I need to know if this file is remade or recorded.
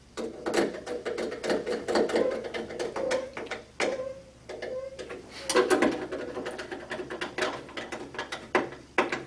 recorded